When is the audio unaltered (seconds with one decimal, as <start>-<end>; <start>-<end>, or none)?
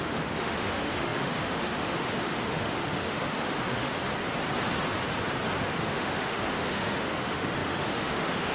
3.9-5.6